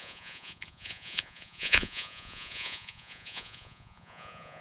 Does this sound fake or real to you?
fake